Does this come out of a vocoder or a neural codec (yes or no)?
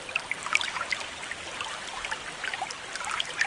no